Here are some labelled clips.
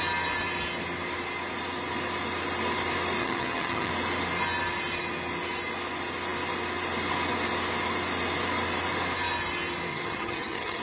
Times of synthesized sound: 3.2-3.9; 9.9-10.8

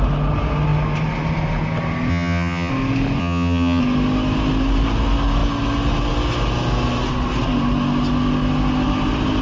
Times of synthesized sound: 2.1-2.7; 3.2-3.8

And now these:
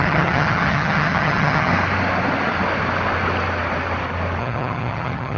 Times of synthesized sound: 0.0-1.7; 4.4-5.4

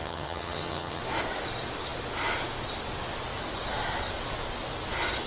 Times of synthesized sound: 0.0-1.0